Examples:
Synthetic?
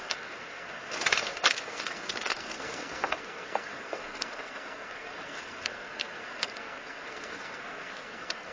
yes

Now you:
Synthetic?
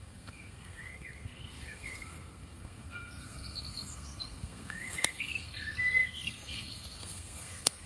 yes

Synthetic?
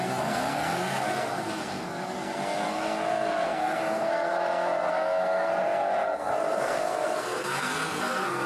yes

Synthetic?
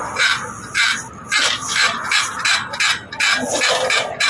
no